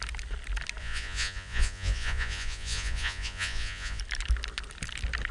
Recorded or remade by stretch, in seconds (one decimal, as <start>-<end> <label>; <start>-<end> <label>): 0.0-0.8 recorded; 0.8-4.0 remade; 4.0-5.3 recorded